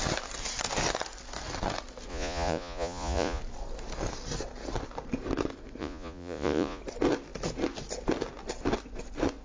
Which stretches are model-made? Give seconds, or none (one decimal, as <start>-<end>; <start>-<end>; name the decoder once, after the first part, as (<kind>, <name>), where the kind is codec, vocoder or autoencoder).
2.1-3.4 (vocoder, Vocos); 5.8-6.8